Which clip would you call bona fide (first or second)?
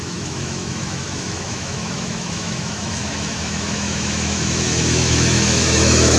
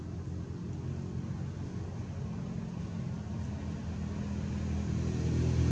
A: second